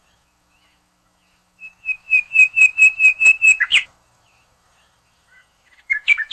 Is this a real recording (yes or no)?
no